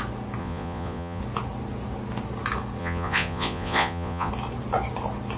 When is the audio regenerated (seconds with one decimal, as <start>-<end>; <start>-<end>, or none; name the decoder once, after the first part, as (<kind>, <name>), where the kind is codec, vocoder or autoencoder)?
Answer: 0.4-1.2 (vocoder, Vocos); 2.8-4.3